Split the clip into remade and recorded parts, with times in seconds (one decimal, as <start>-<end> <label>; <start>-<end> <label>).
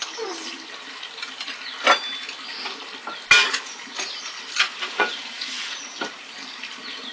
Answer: 0.0-4.7 recorded; 4.7-6.0 remade; 6.0-7.1 recorded